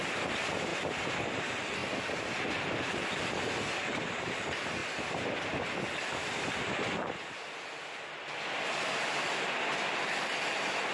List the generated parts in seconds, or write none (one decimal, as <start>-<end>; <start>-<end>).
none

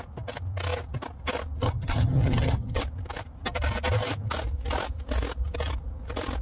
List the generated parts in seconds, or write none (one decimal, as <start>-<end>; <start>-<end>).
1.6-2.8

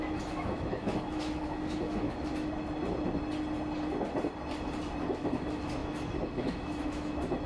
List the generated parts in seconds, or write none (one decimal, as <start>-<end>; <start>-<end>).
0.0-2.3; 5.0-7.5

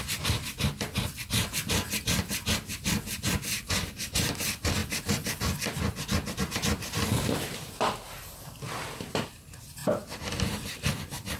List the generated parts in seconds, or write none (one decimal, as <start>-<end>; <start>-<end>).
4.8-7.7

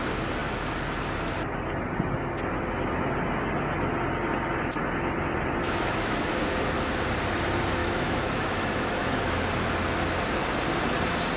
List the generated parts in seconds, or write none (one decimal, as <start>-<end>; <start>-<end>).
5.6-6.3; 7.8-9.2

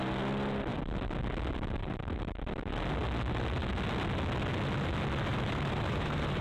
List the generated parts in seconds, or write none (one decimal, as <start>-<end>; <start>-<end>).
1.8-2.4; 5.3-6.4

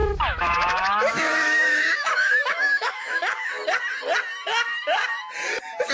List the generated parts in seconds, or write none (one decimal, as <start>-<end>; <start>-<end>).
0.0-3.5

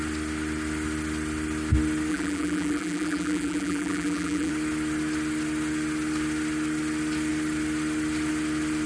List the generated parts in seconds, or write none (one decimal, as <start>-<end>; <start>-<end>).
2.1-4.5